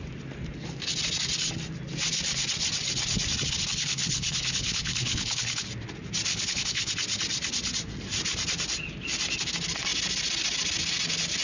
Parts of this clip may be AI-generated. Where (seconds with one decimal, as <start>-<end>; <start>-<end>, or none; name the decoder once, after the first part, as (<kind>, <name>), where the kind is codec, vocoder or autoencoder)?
3.7-5.6 (codec, HILCodec); 6.3-6.9